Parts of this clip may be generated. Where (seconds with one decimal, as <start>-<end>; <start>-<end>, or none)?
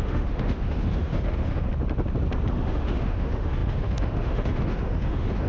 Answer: 0.0-1.7; 2.5-5.5